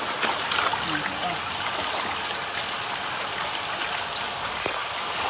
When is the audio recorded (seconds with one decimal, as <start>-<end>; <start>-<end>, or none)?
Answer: 0.0-5.3